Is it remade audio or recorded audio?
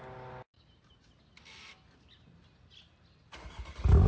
recorded